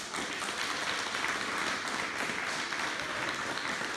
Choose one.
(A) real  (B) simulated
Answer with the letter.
A